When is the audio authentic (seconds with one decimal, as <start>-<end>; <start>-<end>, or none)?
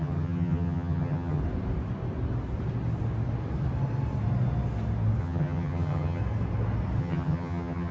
1.4-5.2; 6.2-7.0